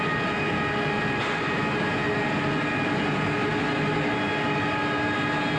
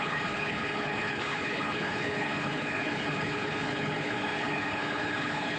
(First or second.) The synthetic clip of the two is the second